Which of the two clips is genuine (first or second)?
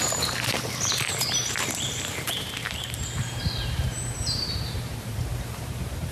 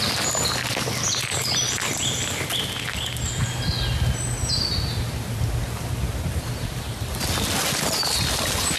second